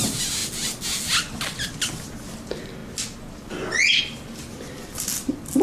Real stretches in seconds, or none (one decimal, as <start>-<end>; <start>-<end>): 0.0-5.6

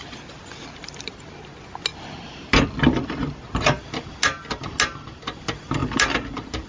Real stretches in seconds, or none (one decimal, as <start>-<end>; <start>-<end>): 0.0-6.7

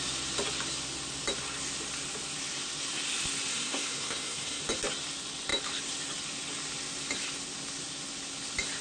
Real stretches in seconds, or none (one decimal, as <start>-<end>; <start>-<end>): 0.0-3.5; 4.6-8.8

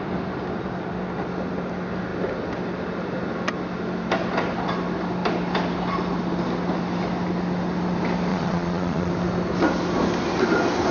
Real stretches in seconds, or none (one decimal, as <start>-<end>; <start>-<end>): 0.0-8.3; 9.1-10.9

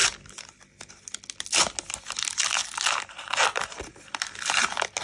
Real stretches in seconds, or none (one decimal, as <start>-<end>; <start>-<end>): 0.0-5.0

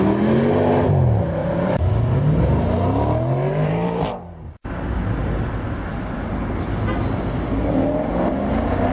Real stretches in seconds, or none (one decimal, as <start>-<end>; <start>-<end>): 0.0-1.4; 4.7-8.9

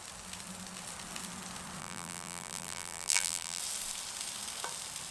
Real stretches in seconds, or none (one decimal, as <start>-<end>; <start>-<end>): 0.0-1.8; 3.6-5.1

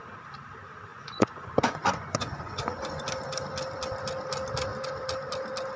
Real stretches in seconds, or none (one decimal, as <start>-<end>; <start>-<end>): 0.0-0.9; 3.0-5.8